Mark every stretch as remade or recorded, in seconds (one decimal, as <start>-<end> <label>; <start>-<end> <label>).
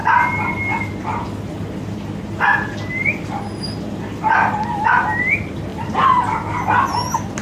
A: 0.0-5.7 recorded; 5.7-6.2 remade; 6.2-7.4 recorded